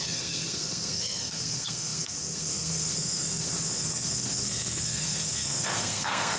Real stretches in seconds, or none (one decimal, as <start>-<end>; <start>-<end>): none

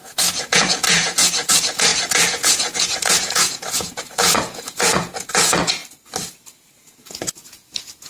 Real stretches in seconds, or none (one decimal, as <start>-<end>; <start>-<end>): 5.8-6.5

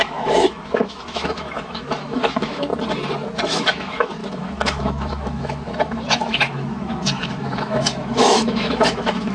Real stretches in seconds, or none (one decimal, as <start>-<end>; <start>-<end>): 2.7-3.4

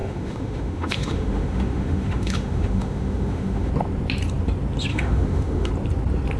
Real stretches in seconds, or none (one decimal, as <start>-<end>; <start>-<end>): 3.7-4.9; 5.7-6.4